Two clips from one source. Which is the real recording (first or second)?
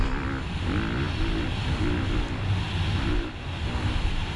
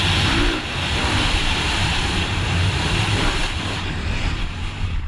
first